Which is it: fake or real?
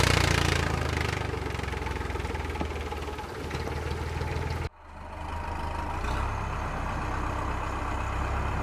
real